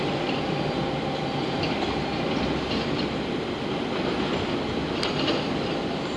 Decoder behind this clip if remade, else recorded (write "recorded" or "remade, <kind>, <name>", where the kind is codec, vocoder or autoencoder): recorded